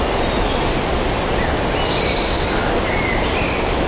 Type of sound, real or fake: real